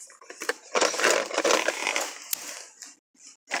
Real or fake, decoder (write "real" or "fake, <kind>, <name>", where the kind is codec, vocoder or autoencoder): real